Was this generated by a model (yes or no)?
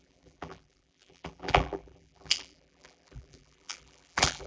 yes